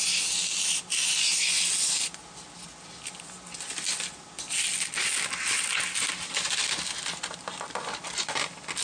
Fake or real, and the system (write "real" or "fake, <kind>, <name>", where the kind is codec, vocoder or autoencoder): real